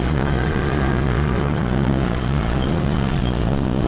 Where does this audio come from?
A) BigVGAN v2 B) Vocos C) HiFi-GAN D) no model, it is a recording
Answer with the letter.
B